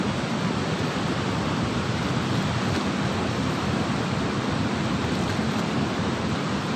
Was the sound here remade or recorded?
recorded